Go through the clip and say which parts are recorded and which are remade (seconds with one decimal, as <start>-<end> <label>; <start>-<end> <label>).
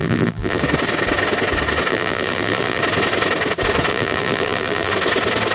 0.0-0.6 remade; 0.6-1.9 recorded; 1.9-2.8 remade; 2.8-3.9 recorded; 3.9-4.9 remade; 4.9-5.5 recorded